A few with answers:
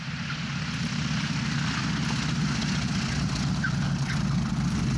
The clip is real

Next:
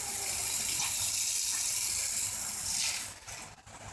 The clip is real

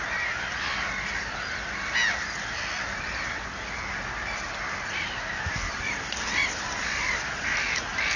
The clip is real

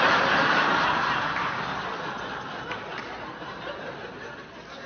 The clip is real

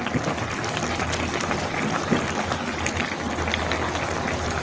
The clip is real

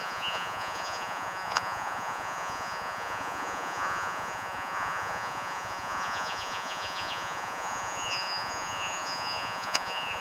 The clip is fake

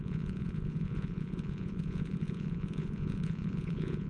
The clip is fake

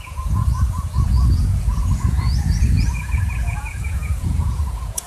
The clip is fake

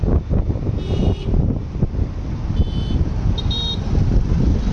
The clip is real